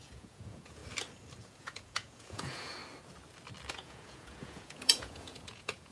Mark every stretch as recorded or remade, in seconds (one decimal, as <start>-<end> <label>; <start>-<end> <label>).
0.0-0.8 remade; 0.8-1.4 recorded; 1.4-2.8 remade; 2.8-3.7 recorded; 3.7-5.9 remade